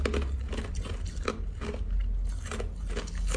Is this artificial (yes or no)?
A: no